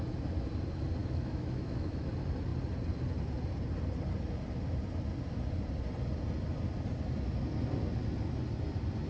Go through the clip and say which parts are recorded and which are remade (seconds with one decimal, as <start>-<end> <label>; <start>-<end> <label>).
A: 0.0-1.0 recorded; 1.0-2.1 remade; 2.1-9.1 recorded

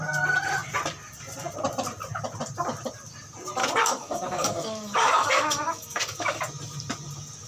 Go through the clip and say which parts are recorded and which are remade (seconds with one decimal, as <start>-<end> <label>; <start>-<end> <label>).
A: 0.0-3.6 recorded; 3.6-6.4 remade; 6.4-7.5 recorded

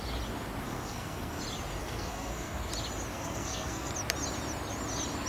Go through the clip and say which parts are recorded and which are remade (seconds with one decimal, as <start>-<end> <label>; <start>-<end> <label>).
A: 0.0-0.6 recorded; 0.6-1.4 remade; 1.4-1.8 recorded; 1.8-2.7 remade; 2.7-3.1 recorded; 3.1-3.9 remade; 3.9-5.3 recorded